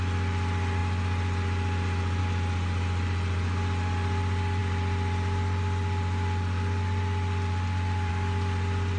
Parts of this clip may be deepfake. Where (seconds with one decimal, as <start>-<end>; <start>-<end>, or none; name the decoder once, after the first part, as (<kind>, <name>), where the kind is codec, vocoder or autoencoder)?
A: none